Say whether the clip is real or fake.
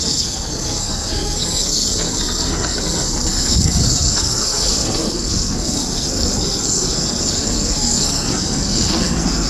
fake